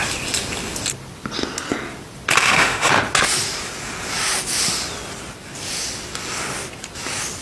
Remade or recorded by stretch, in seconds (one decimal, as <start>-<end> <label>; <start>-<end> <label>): 0.0-2.4 recorded; 2.4-2.9 remade; 2.9-7.4 recorded

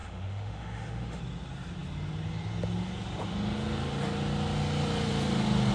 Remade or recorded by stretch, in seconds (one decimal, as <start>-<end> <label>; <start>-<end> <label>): 0.0-1.2 remade; 1.2-5.7 recorded

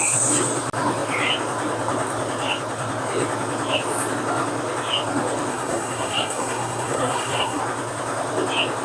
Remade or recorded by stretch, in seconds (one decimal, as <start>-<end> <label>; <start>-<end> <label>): 0.0-5.5 recorded; 5.5-7.6 remade; 7.6-8.8 recorded

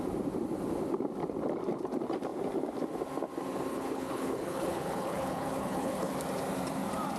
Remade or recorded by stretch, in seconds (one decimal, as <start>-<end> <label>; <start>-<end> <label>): 0.0-3.7 recorded; 3.7-6.1 remade; 6.1-7.2 recorded

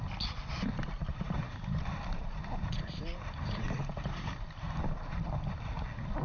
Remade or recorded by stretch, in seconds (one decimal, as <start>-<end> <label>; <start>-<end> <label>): 0.0-1.1 recorded; 1.1-4.8 remade; 4.8-6.2 recorded

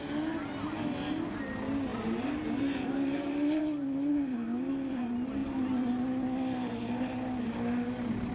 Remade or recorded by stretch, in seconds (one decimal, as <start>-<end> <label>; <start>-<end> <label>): 0.0-1.9 recorded; 1.9-3.6 remade; 3.6-8.3 recorded

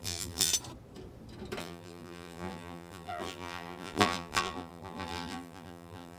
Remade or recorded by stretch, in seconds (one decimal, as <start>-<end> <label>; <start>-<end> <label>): 0.0-0.5 remade; 0.5-1.6 recorded; 1.6-6.2 remade